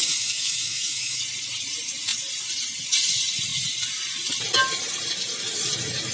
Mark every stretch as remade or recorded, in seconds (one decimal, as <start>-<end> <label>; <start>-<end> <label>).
0.0-1.2 remade; 1.2-6.1 recorded